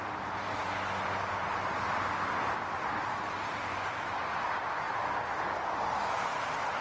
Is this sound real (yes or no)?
yes